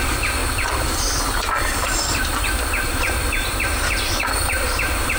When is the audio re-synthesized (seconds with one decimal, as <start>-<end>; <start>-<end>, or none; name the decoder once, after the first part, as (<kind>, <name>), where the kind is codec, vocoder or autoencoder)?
none